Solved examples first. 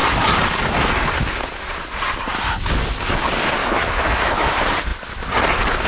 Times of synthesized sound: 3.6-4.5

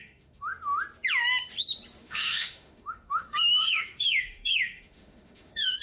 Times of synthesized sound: 0.0-0.5; 2.0-5.8

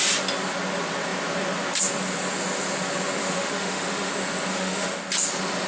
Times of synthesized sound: 3.2-4.1; 4.5-5.0